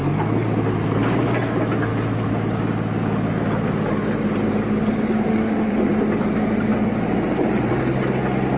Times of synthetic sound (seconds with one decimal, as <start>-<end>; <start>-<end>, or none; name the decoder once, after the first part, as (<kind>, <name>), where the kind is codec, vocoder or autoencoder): 5.3-5.9 (autoencoder, DAC-VAE)